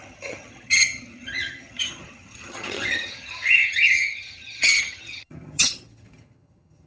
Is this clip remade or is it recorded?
remade